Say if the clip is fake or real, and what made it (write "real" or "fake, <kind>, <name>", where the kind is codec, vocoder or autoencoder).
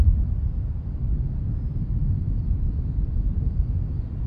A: real